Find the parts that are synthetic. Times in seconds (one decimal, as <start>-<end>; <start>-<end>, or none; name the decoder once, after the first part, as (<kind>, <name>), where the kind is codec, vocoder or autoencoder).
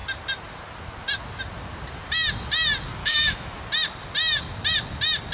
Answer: 3.0-3.6 (autoencoder, DAC-VAE)